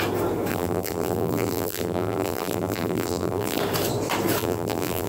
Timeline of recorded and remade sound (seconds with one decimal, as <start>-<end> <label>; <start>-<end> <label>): 0.0-0.5 recorded; 0.5-3.6 remade; 3.6-4.4 recorded; 4.4-5.1 remade